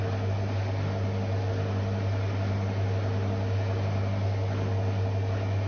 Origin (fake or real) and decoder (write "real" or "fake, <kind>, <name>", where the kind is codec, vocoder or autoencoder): real